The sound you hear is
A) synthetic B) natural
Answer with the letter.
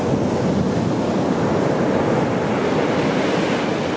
B